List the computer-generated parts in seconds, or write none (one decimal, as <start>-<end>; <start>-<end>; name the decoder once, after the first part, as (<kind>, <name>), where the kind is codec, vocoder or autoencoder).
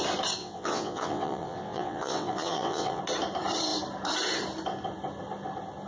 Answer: 0.4-3.0 (vocoder, WaveNeXt)